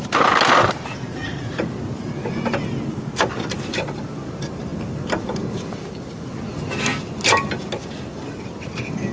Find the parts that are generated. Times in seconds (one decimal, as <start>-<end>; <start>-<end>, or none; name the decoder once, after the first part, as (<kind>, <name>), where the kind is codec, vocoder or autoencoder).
1.1-1.7 (vocoder, Vocos)